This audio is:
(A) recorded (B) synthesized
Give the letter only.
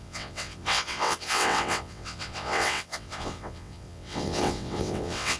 B